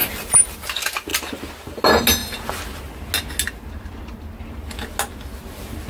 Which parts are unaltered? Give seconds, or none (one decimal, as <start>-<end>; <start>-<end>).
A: 0.7-5.9